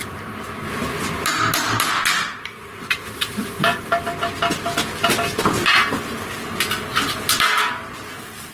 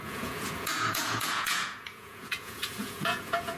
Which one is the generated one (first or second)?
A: second